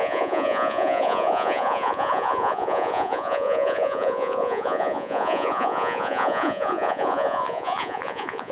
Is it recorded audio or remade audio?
remade